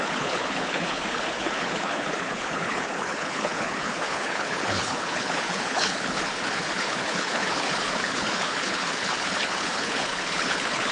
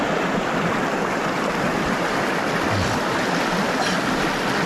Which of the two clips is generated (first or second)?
first